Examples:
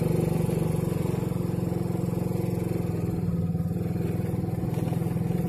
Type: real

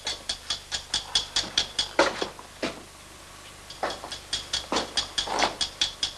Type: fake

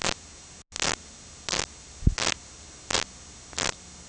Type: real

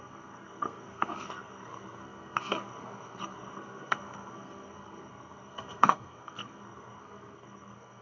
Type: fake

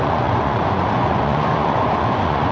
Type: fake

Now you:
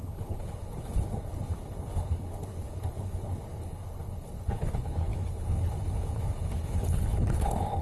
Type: fake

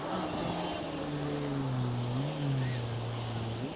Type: real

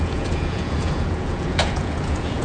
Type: fake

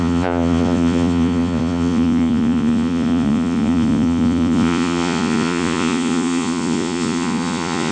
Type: fake